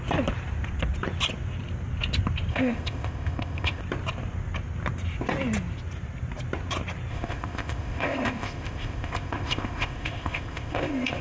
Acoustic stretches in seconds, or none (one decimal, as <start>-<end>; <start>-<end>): 0.0-2.5; 3.8-7.1